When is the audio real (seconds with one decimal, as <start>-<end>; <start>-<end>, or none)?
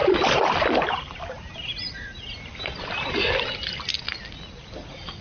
0.0-5.2